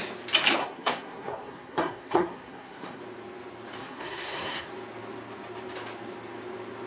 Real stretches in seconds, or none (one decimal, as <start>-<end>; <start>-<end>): 0.0-0.6; 3.0-3.8; 4.7-6.9